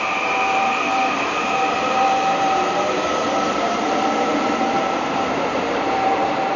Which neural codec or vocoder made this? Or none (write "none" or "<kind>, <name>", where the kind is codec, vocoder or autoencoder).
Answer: vocoder, BigVGAN v2